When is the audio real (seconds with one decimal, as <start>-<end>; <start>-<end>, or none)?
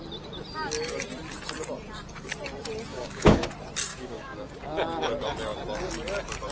0.0-2.9; 3.5-3.9; 4.5-6.5